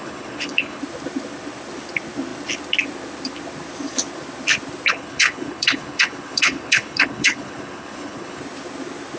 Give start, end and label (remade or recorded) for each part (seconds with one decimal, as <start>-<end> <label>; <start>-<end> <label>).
0.0-0.8 remade; 0.8-4.9 recorded; 4.9-8.4 remade; 8.4-9.2 recorded